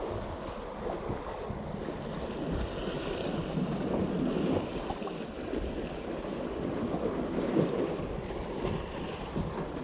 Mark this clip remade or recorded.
recorded